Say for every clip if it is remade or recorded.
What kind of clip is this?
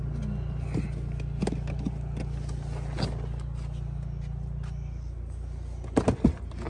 recorded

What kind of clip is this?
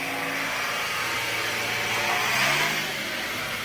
recorded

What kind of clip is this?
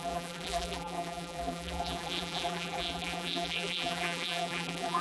remade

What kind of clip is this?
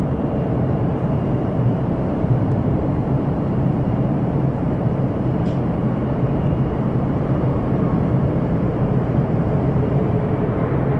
remade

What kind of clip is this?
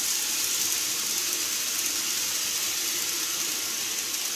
recorded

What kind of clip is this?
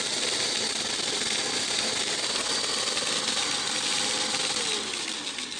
recorded